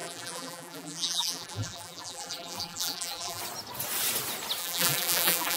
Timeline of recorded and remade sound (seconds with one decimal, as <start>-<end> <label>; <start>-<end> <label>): 0.0-3.4 remade; 3.4-4.6 recorded; 4.6-5.6 remade